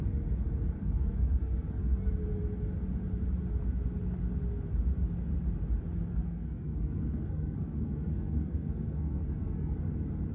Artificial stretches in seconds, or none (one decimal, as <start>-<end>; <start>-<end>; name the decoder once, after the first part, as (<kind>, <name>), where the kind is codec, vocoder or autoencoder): 0.8-2.1 (codec, SNAC); 6.1-9.8